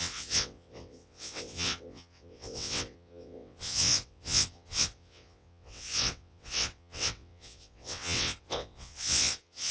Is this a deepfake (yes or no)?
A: yes